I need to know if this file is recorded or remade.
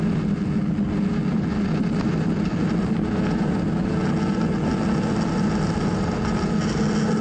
recorded